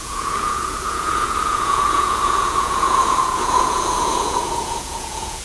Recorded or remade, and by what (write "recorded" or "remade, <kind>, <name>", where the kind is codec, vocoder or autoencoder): remade, vocoder, Vocos